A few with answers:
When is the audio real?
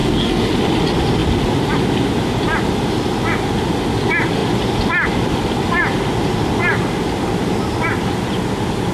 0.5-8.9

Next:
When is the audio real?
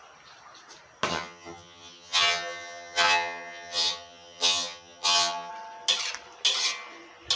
0.0-1.1; 5.5-7.4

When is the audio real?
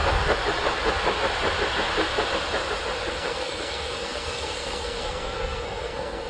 0.0-3.1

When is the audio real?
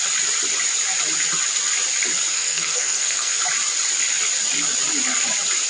0.0-2.3; 3.4-5.7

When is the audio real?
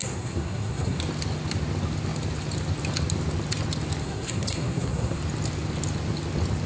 1.0-4.0; 5.2-6.7